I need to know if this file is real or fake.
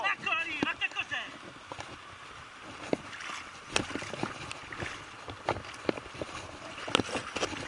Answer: real